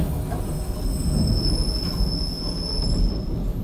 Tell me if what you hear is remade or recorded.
recorded